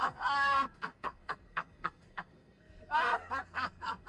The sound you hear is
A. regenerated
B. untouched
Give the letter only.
A